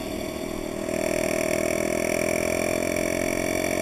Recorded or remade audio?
recorded